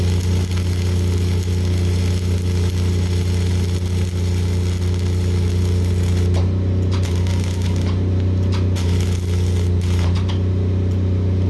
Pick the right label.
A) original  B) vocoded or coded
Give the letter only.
A